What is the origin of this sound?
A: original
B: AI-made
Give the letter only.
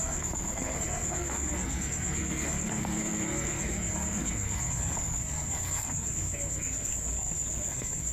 B